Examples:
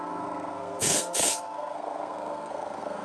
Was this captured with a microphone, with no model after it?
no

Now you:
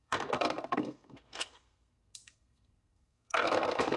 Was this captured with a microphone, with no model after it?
no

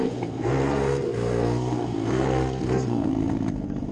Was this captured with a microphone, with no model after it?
no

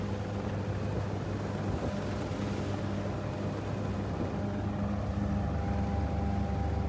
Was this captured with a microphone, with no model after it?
yes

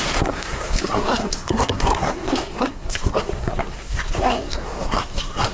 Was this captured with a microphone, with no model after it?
no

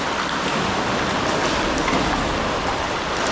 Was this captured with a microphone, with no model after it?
yes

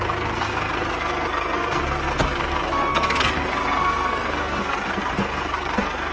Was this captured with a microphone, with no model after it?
no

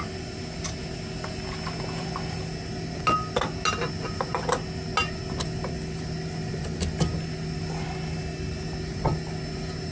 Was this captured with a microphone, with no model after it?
yes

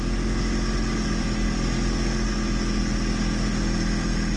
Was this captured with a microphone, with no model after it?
yes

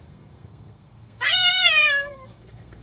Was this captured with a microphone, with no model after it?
no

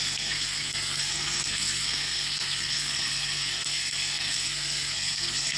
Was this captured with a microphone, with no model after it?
no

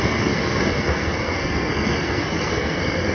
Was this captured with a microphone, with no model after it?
no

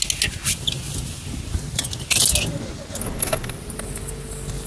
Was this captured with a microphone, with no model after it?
yes